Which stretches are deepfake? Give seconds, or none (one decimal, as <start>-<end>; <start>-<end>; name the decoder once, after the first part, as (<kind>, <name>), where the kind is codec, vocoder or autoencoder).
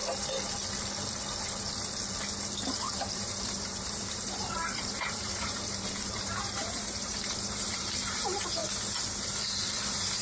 2.9-8.6 (vocoder, BigVGAN v2); 9.5-10.2